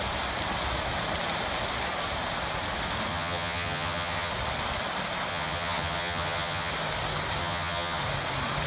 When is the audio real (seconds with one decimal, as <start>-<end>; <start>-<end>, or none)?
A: 0.0-3.1; 4.3-5.3; 6.7-7.4; 8.0-8.7